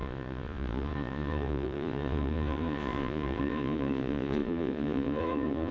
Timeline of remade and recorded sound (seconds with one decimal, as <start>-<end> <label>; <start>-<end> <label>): 0.0-5.7 remade